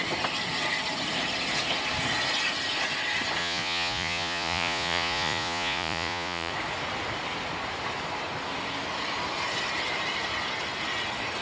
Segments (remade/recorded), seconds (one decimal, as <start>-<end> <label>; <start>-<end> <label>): 0.0-3.4 recorded; 3.4-6.5 remade; 6.5-11.4 recorded

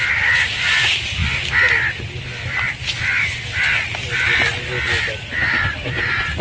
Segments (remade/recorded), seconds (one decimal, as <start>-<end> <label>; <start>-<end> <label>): 0.0-6.4 recorded